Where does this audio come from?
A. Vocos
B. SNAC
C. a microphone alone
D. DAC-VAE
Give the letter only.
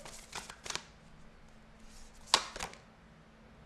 C